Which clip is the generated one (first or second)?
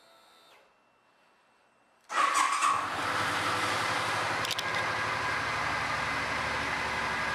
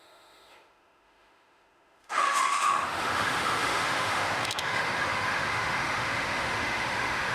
second